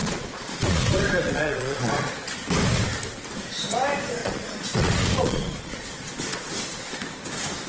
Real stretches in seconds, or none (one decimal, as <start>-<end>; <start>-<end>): 2.1-4.2; 6.5-7.7